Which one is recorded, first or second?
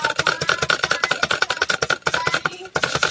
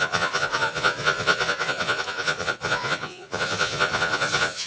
first